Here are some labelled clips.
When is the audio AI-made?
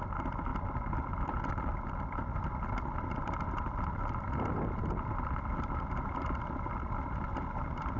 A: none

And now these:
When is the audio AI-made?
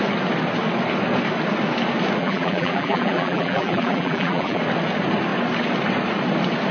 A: 2.2-4.6 (vocoder, BigVGAN v2)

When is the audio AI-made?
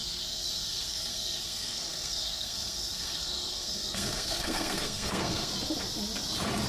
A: 0.0-5.5 (codec, SNAC)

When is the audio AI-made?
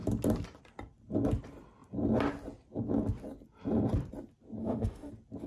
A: 4.6-5.1 (autoencoder, DAC-VAE)